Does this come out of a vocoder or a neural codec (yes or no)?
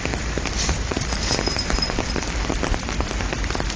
no